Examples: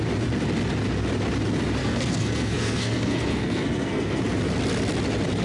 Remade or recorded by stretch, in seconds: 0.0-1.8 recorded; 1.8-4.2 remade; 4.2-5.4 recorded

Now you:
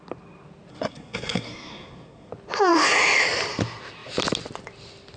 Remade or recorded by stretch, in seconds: 0.0-0.7 recorded; 0.7-2.3 remade; 2.3-5.2 recorded

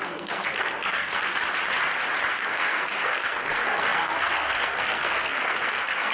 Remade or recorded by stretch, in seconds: 0.0-1.4 remade; 1.4-2.3 recorded; 2.3-6.1 remade

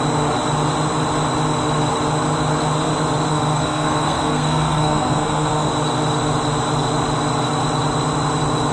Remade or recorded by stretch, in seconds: 0.0-3.3 recorded; 3.3-5.7 remade; 5.7-8.7 recorded

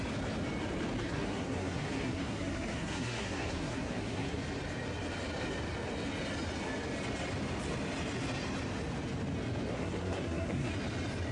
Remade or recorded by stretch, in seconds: 0.0-1.0 recorded; 1.0-4.4 remade; 4.4-9.7 recorded; 9.7-10.7 remade; 10.7-11.3 recorded